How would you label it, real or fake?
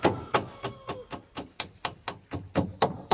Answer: real